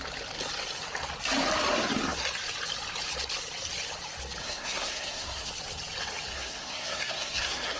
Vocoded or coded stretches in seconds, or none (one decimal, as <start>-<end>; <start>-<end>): 4.4-5.5; 6.3-7.8